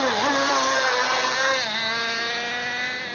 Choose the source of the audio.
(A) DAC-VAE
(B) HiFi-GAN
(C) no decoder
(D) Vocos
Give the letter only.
C